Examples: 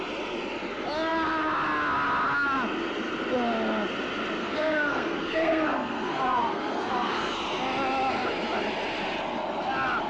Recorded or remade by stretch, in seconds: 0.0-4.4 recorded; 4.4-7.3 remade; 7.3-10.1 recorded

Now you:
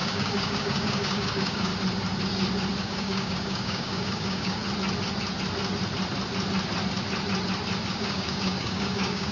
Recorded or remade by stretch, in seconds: 0.0-1.7 remade; 1.7-2.8 recorded; 2.8-4.6 remade; 4.6-7.9 recorded; 7.9-9.3 remade

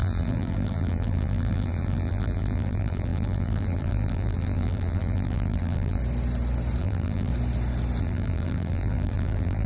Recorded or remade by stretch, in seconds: 0.0-6.0 remade; 6.0-6.8 recorded; 6.8-7.3 remade; 7.3-8.0 recorded; 8.0-9.7 remade

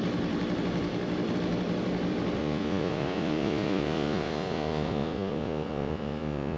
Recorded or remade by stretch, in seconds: 0.0-2.4 recorded; 2.4-6.6 remade